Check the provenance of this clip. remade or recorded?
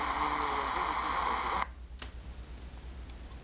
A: recorded